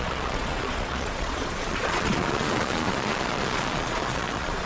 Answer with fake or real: fake